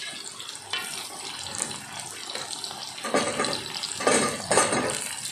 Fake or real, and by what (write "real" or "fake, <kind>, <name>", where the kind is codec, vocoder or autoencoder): real